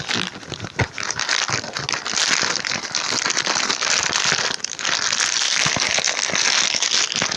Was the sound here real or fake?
real